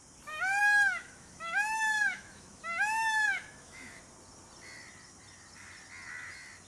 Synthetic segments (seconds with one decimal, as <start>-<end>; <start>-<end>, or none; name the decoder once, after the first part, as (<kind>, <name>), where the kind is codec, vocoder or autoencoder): 0.6-4.0 (autoencoder, DAC-VAE)